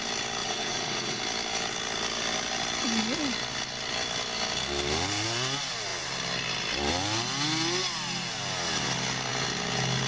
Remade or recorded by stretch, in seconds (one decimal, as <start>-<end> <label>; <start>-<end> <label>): 0.0-0.4 recorded; 0.4-1.2 remade; 1.2-10.1 recorded